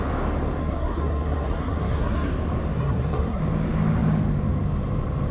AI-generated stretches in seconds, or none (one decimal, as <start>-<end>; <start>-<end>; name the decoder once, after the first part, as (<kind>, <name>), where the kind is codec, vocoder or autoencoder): 0.6-2.3 (codec, SNAC); 2.7-3.4